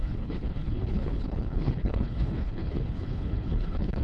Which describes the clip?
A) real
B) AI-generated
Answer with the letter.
B